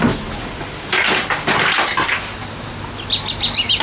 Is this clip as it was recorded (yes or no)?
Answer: yes